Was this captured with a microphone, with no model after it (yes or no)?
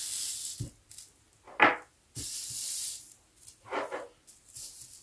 yes